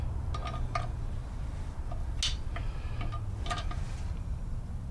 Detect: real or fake real